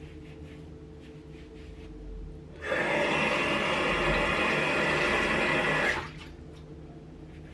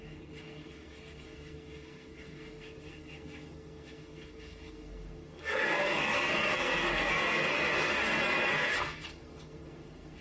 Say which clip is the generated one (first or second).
second